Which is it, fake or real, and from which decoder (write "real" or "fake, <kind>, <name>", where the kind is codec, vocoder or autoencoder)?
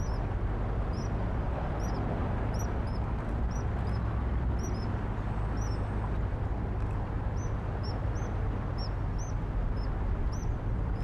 real